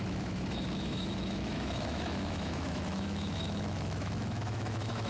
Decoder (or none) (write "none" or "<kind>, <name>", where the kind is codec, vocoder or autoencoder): autoencoder, DAC-VAE